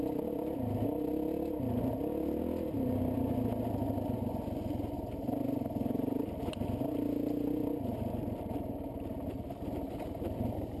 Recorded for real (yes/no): yes